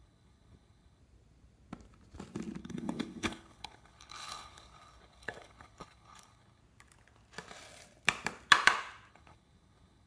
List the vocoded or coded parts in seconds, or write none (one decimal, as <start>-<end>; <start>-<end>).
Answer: 0.0-1.0; 2.6-6.6; 9.1-10.1